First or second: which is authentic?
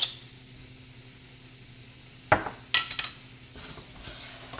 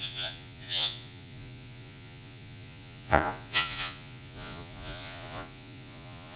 first